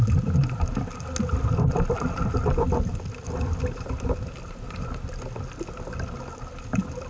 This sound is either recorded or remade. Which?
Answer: recorded